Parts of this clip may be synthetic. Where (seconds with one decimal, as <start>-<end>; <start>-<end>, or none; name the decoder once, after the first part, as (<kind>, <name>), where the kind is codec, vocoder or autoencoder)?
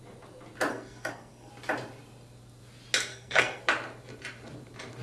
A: 0.7-1.5 (codec, SNAC); 3.1-3.6